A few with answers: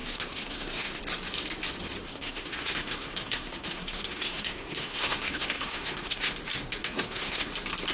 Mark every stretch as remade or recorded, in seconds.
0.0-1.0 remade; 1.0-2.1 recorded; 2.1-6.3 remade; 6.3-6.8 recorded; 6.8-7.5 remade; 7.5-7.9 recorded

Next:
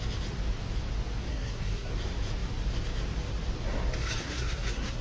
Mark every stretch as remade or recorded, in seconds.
0.0-1.3 recorded; 1.3-1.9 remade; 1.9-4.2 recorded; 4.2-5.0 remade

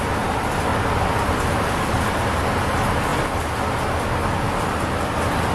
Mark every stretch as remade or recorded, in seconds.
0.0-5.5 recorded